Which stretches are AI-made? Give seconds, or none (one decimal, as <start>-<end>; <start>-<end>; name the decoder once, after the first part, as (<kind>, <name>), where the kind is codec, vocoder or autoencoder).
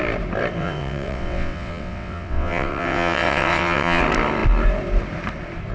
0.6-4.0 (vocoder, WaveNeXt)